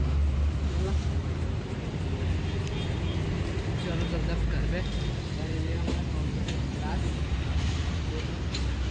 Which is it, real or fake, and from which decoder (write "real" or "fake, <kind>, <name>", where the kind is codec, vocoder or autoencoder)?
real